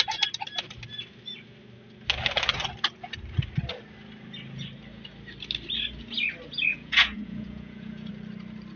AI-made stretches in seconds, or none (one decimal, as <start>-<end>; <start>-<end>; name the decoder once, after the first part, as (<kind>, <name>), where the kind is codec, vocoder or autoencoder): 6.7-8.1 (vocoder, Vocos)